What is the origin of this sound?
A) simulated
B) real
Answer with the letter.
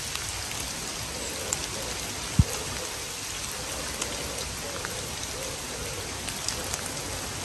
B